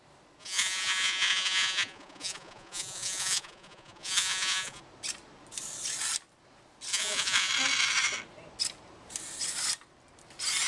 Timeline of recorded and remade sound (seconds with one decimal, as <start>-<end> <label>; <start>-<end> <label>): 0.0-0.4 recorded; 0.4-4.8 remade; 4.8-6.9 recorded; 6.9-7.5 remade; 7.5-10.7 recorded